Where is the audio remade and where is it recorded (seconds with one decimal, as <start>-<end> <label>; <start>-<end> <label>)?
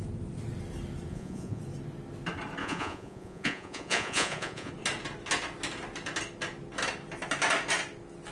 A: 0.0-1.1 recorded; 1.1-1.6 remade; 1.6-2.6 recorded; 2.6-4.7 remade; 4.7-8.3 recorded